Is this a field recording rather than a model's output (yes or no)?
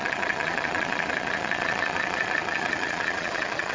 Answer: no